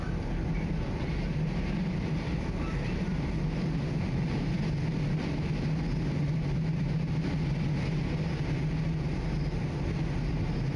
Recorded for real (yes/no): yes